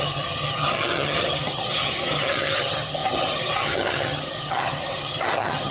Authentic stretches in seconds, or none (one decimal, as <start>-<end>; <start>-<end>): none